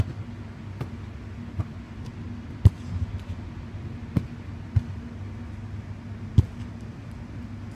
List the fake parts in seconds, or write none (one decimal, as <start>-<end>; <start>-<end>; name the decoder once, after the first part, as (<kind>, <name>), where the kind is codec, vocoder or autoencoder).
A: none